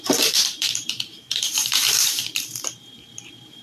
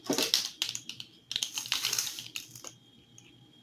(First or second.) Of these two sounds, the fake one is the first